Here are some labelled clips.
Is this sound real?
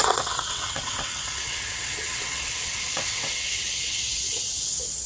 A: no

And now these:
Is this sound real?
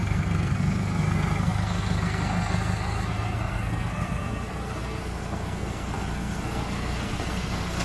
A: no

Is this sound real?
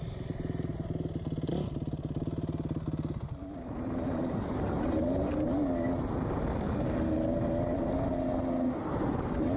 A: yes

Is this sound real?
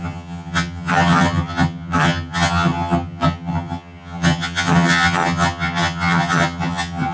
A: no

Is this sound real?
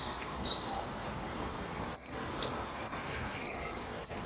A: no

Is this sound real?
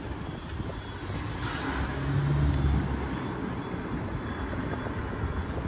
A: yes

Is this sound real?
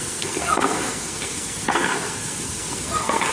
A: no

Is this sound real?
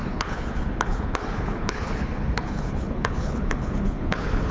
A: no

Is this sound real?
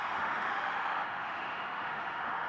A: no